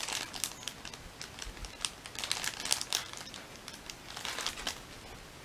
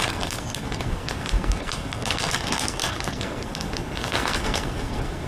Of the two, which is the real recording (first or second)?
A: first